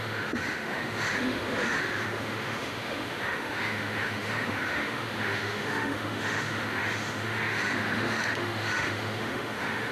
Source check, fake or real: fake